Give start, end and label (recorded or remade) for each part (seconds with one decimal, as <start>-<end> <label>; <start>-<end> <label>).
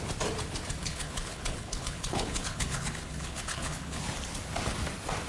0.0-0.8 recorded; 0.8-4.0 remade; 4.0-5.3 recorded